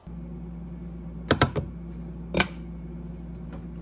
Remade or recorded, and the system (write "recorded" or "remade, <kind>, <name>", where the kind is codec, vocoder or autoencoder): recorded